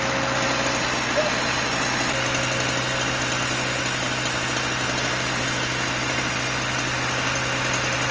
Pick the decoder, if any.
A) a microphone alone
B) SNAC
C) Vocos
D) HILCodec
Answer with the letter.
A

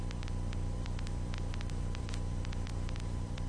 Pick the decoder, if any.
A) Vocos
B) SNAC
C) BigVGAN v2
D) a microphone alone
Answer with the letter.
C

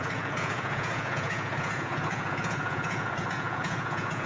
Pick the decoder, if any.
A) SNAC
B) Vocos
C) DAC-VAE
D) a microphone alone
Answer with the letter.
B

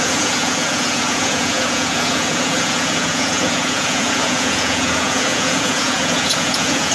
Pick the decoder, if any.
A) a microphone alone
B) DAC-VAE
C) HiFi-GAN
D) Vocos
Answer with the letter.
D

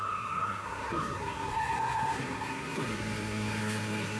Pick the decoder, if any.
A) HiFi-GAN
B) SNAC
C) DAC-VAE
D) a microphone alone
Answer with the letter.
B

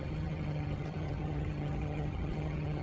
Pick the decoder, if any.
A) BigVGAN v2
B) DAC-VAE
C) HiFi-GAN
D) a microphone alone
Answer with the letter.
C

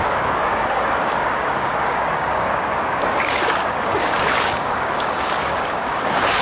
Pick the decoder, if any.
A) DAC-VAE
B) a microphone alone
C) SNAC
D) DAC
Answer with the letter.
D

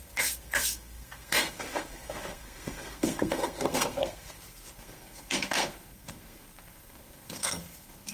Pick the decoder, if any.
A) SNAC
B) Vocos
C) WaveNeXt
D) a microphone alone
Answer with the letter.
A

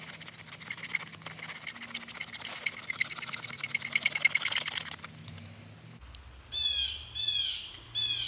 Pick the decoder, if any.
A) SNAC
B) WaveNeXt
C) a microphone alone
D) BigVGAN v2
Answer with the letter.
C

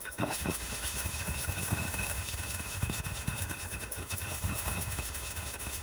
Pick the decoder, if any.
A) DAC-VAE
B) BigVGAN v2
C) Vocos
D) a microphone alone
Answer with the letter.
A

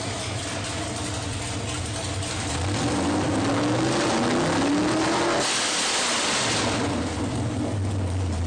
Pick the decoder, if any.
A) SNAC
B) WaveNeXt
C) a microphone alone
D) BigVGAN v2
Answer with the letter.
C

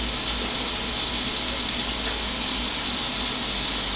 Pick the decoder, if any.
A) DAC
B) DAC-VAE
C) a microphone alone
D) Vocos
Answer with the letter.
C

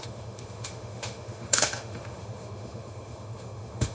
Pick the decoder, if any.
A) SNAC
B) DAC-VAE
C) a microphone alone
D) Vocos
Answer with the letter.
B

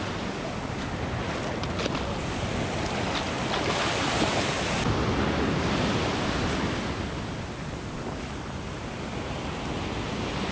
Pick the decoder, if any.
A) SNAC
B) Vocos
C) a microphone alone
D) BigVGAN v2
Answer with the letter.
C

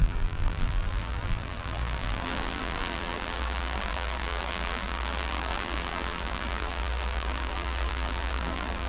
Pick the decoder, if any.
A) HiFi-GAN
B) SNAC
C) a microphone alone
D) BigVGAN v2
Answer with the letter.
D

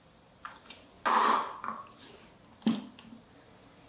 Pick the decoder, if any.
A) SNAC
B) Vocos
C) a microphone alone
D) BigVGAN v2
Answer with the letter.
C